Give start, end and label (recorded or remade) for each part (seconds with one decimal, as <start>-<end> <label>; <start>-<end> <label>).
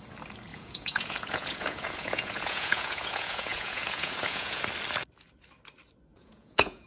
0.0-0.5 recorded; 0.5-4.6 remade; 4.6-6.1 recorded; 6.1-6.9 remade